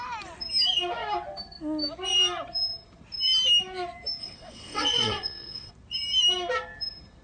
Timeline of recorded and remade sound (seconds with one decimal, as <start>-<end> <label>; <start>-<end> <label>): 0.0-4.2 recorded; 4.2-5.7 remade; 5.7-7.2 recorded